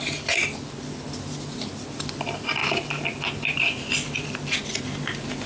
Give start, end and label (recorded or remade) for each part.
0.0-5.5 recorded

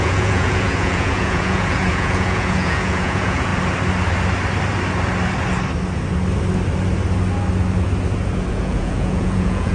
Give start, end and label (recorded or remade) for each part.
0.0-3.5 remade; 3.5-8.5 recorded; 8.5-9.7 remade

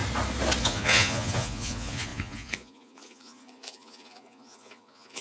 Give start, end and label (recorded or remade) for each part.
0.0-0.6 recorded; 0.6-5.2 remade

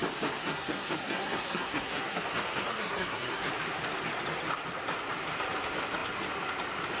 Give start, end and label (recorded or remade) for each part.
0.0-0.4 recorded; 0.4-2.2 remade; 2.2-2.7 recorded; 2.7-3.5 remade; 3.5-7.0 recorded

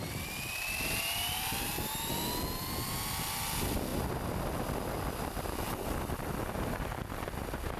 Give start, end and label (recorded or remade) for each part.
0.0-7.8 recorded

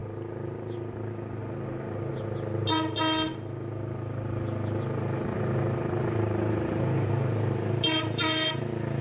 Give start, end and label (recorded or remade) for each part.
0.0-5.3 recorded; 5.3-8.6 remade; 8.6-9.0 recorded

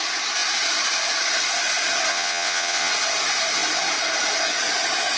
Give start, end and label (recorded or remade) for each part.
0.0-2.1 recorded; 2.1-2.9 remade; 2.9-5.2 recorded